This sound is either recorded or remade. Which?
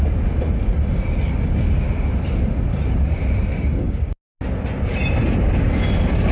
recorded